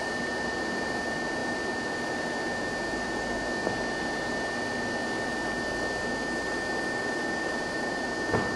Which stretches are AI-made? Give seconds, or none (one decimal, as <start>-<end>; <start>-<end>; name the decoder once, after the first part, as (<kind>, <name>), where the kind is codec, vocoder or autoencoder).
none